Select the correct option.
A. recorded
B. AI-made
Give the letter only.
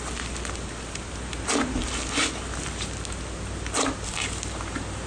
A